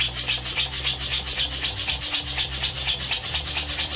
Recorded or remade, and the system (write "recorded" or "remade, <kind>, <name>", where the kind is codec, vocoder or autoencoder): remade, vocoder, BigVGAN v2